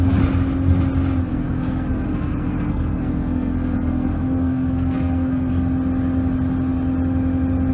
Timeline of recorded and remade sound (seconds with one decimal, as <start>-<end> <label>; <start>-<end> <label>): 0.0-1.3 recorded; 1.3-5.5 remade; 5.5-7.7 recorded

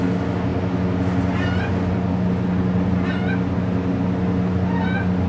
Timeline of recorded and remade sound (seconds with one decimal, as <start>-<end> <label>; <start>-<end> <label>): 0.0-5.3 recorded

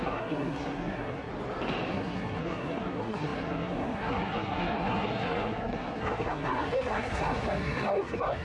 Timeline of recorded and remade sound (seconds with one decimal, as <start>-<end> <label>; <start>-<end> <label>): 0.0-1.3 remade; 1.3-1.9 recorded; 1.9-8.4 remade

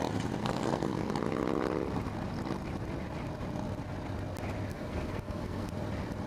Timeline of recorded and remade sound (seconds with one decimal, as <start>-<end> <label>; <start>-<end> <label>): 0.0-0.4 recorded; 0.4-1.1 remade; 1.1-4.7 recorded; 4.7-5.7 remade; 5.7-6.3 recorded

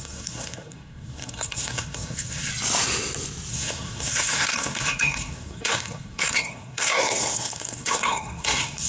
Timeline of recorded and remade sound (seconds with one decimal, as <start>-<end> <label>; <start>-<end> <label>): 0.0-2.5 remade; 2.5-3.5 recorded; 3.5-8.9 remade

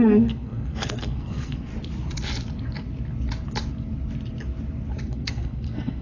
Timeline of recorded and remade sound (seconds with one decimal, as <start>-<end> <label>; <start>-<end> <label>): 0.0-1.7 remade; 1.7-5.0 recorded; 5.0-6.0 remade